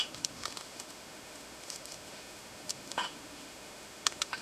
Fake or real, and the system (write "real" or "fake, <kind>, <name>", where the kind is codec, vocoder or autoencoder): fake, autoencoder, DAC-VAE